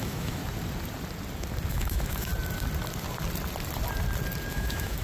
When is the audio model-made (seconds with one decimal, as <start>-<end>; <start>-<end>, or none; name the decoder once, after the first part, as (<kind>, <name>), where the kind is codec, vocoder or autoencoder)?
0.0-0.4 (autoencoder, DAC-VAE); 1.7-2.3; 4.5-5.0